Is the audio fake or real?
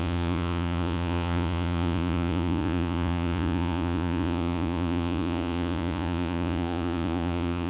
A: fake